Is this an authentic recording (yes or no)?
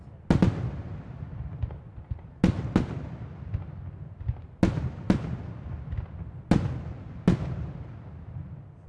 yes